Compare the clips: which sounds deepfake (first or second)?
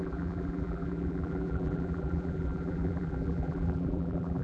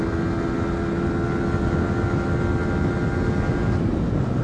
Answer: first